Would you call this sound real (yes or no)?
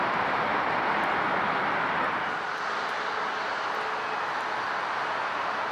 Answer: yes